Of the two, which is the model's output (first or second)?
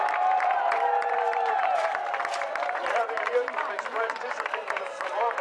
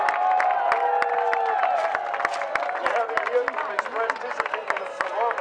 first